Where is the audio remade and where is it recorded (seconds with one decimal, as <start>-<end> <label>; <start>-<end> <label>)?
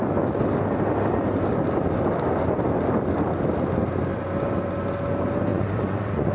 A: 0.0-5.5 recorded; 5.5-6.3 remade